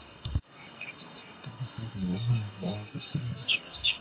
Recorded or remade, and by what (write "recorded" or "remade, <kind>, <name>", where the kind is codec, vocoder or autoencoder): remade, codec, SNAC